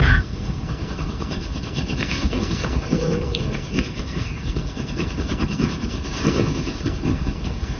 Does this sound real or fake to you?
fake